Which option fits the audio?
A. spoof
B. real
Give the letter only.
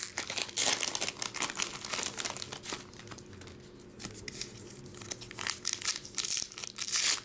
B